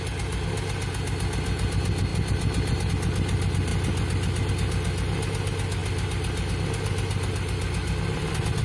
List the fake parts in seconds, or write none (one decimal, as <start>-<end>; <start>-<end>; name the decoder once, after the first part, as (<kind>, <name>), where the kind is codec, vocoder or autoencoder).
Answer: none